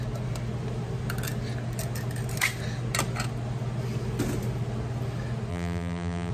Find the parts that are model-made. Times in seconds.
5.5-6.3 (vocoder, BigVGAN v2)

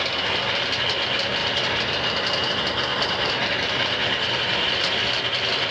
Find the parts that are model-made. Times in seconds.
1.4-1.9 (vocoder, BigVGAN v2); 2.9-5.2